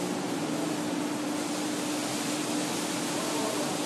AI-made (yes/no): no